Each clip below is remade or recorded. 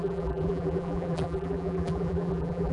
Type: remade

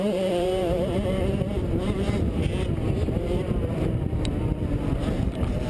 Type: remade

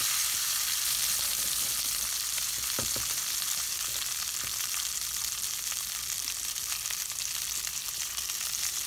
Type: remade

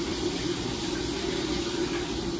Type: recorded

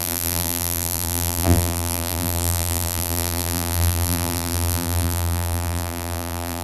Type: remade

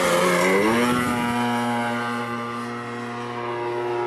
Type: recorded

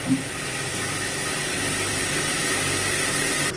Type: recorded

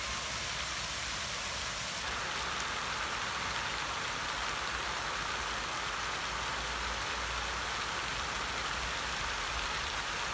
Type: recorded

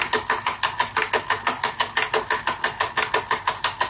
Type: recorded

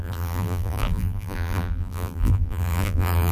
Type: remade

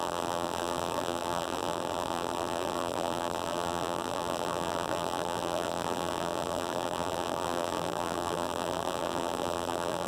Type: remade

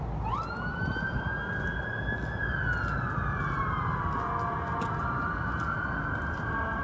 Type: recorded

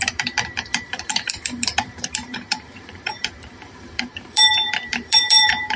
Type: remade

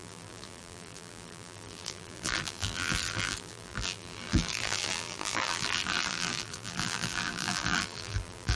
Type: remade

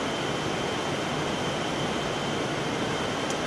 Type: remade